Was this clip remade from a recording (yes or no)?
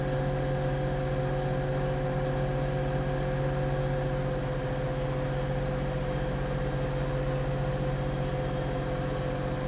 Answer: no